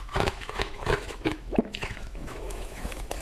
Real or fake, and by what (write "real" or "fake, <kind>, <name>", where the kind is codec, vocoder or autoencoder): fake, autoencoder, DAC-VAE